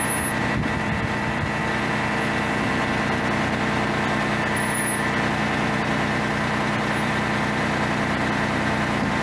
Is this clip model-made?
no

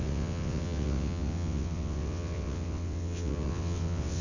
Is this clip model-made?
yes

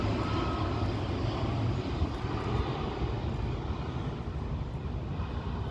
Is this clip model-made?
no